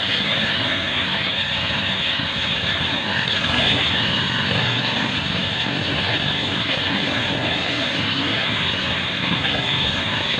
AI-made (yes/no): yes